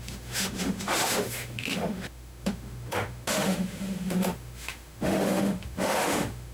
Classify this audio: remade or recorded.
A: remade